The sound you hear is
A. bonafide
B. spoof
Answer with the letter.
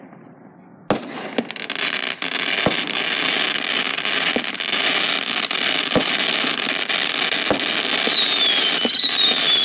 A